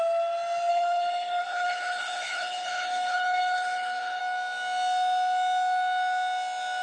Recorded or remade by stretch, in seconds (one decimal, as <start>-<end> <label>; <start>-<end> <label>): 0.0-0.7 recorded; 0.7-4.2 remade; 4.2-6.8 recorded